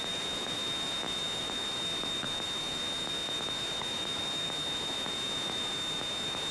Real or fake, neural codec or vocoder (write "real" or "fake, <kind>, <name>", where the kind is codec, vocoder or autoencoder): fake, autoencoder, DAC-VAE